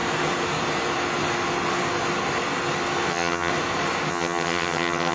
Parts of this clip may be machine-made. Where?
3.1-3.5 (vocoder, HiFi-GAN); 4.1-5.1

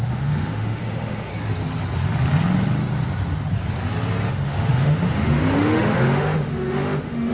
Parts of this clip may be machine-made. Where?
0.0-1.3 (autoencoder, DAC-VAE); 4.3-7.3

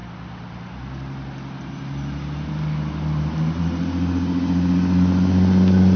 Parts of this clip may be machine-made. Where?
none

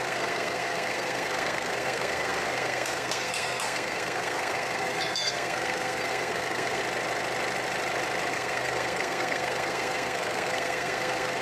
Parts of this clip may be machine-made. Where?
0.0-6.8 (codec, SNAC); 8.3-11.4

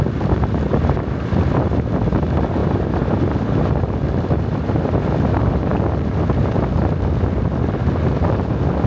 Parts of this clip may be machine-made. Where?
none

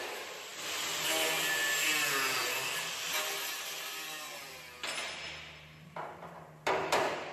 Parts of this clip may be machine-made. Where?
none

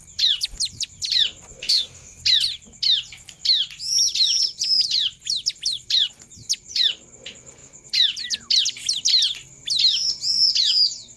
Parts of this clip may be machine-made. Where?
1.6-2.2 (autoencoder, DAC-VAE)

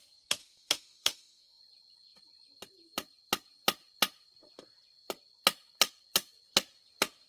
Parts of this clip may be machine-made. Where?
0.4-1.6 (autoencoder, DAC-VAE)